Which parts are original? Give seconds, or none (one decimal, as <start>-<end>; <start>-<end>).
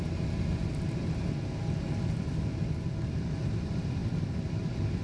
0.5-3.5; 4.0-5.0